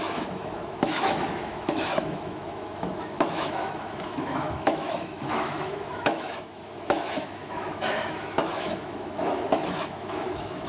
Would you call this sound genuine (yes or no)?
no